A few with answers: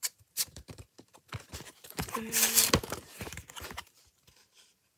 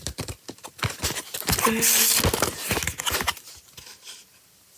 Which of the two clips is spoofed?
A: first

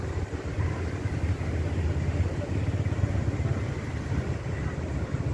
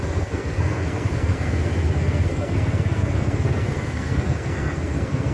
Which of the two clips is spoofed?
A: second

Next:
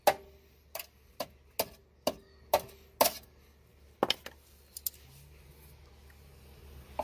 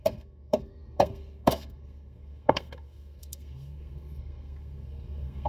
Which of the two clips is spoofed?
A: second